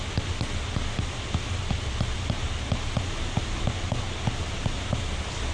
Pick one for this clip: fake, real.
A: real